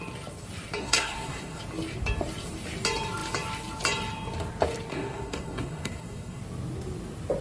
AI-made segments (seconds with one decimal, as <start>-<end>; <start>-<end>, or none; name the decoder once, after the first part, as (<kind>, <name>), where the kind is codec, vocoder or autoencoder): 0.8-1.6 (codec, SNAC); 4.9-6.4